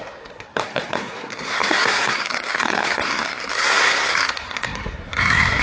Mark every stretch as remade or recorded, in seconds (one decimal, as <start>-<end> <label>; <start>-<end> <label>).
0.0-5.6 remade